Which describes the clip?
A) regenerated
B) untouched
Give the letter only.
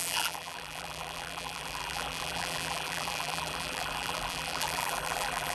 A